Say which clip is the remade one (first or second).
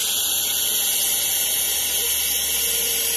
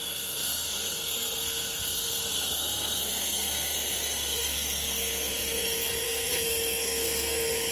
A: second